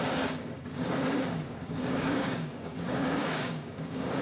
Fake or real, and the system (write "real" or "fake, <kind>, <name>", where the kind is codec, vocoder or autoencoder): fake, codec, DAC